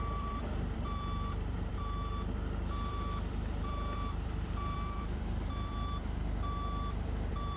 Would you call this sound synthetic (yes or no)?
yes